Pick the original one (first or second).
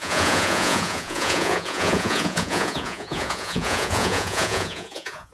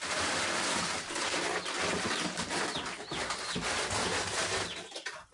second